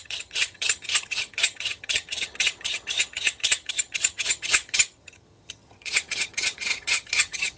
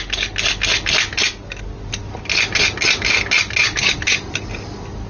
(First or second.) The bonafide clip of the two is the second